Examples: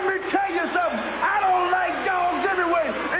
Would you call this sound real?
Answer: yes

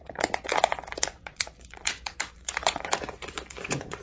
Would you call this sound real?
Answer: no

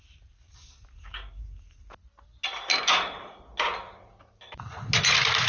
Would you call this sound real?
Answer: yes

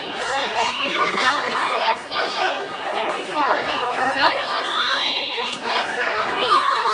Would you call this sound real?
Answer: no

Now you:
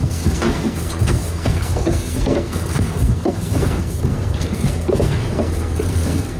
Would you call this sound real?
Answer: no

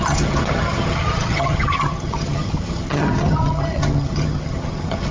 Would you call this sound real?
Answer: no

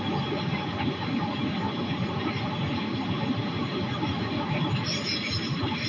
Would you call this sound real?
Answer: yes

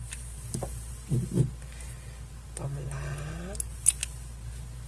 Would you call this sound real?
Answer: yes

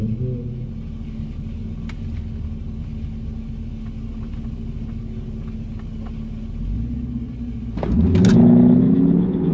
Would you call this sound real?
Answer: yes